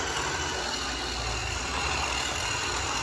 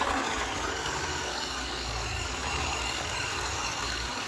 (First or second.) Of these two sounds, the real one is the first